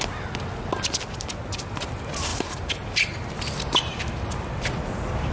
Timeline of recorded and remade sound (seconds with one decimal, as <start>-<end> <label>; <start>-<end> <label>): 0.0-5.3 recorded